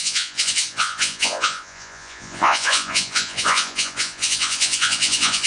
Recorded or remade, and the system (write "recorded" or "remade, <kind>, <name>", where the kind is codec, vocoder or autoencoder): remade, vocoder, Vocos